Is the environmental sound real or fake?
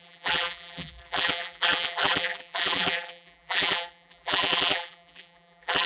fake